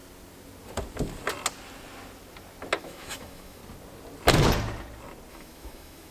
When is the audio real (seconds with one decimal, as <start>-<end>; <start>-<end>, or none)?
0.0-2.8; 3.6-5.3